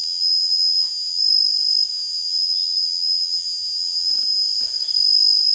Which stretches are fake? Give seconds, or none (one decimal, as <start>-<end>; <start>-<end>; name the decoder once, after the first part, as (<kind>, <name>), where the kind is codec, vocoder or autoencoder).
0.0-1.2 (vocoder, HiFi-GAN); 1.9-4.1